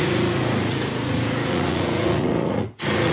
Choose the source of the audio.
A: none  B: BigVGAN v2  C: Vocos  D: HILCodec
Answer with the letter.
C